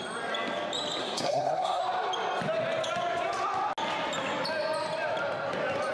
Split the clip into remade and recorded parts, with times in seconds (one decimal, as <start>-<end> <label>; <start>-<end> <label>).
0.0-1.0 recorded; 1.0-1.8 remade; 1.8-5.9 recorded